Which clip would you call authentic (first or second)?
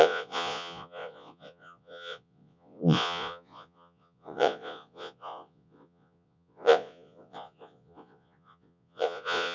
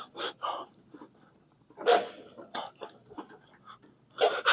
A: second